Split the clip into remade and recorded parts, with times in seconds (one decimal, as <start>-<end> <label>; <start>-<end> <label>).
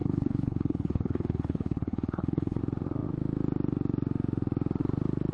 0.0-2.6 remade; 2.6-5.3 recorded